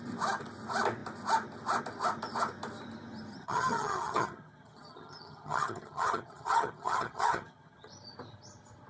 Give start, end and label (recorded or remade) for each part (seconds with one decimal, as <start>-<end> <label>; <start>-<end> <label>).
0.0-3.3 recorded; 3.3-7.9 remade; 7.9-8.9 recorded